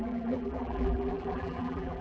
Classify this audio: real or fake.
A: fake